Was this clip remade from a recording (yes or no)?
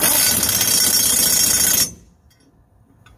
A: no